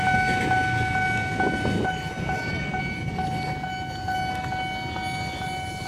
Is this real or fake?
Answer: real